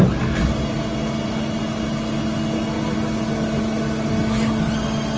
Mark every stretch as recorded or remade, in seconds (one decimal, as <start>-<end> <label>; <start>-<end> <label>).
0.0-5.2 recorded